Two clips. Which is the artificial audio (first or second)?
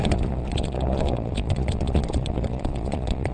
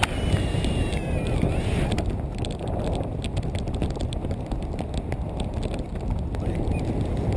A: first